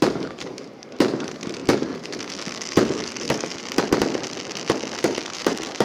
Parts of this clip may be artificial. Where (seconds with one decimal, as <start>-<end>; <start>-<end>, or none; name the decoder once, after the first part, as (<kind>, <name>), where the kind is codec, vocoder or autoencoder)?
0.0-3.5 (codec, DAC); 5.0-5.8